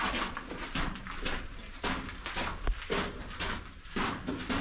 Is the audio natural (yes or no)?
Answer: yes